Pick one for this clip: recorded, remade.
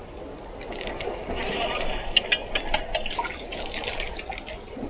recorded